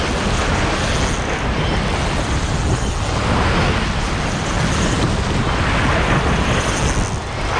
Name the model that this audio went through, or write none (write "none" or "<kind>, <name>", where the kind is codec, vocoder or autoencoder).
none